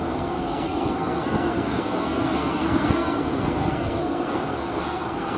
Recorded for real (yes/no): no